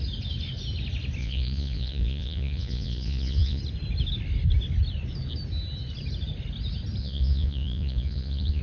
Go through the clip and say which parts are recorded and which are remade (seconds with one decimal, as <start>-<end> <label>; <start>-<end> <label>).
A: 0.0-1.2 recorded; 1.2-3.6 remade; 3.6-7.0 recorded; 7.0-8.6 remade